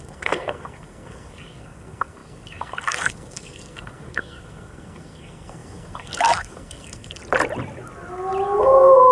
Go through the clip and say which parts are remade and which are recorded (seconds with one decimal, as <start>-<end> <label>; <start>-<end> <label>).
0.0-7.2 remade; 7.2-8.6 recorded; 8.6-9.1 remade